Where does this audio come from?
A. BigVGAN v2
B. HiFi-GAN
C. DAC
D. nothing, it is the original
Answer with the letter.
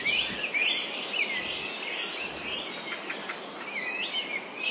D